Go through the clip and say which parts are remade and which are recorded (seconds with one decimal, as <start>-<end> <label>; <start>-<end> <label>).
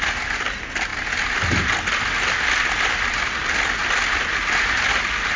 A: 0.0-5.4 recorded